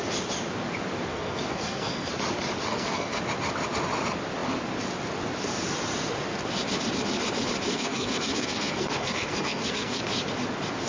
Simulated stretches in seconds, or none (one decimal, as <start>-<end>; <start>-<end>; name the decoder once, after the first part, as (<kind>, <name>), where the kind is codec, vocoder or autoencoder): 1.1-2.1 (codec, SNAC); 2.7-3.2; 7.7-10.0